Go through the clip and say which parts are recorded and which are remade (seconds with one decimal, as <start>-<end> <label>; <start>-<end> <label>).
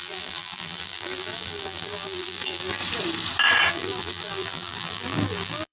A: 0.0-2.8 remade; 2.8-3.7 recorded; 3.7-5.7 remade